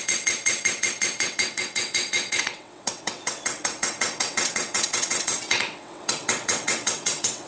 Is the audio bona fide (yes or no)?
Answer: no